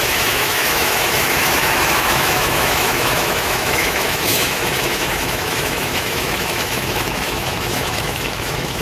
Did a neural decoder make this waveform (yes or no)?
yes